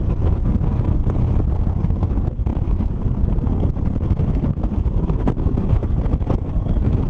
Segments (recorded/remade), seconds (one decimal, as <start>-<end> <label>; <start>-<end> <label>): 0.0-1.0 remade; 1.0-1.5 recorded; 1.5-7.1 remade